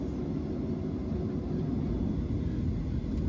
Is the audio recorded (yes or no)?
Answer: yes